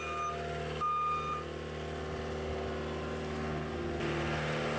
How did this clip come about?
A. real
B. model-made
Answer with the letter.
A